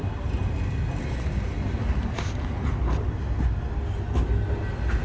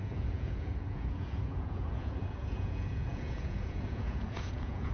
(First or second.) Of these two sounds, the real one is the first